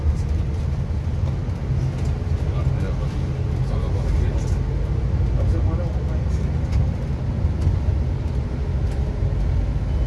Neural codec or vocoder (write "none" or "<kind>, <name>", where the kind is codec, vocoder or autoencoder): none